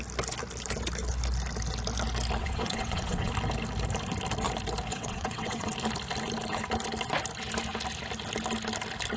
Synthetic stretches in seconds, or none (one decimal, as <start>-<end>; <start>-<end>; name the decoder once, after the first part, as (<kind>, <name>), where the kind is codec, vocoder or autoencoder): 2.4-3.3 (vocoder, WaveNeXt); 4.9-5.7